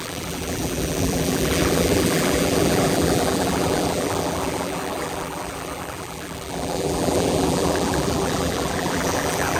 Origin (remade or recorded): remade